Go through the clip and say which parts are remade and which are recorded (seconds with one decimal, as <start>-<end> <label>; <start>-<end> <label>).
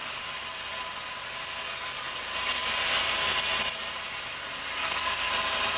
0.0-4.8 recorded; 4.8-5.3 remade; 5.3-5.8 recorded